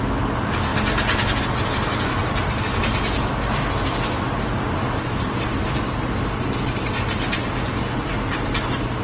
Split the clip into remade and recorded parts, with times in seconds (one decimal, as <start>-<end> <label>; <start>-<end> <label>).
0.0-9.0 recorded